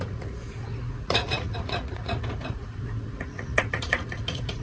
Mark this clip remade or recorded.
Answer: remade